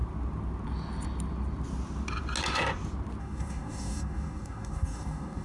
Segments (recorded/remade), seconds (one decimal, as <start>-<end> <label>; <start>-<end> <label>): 0.0-3.2 recorded; 3.2-5.4 remade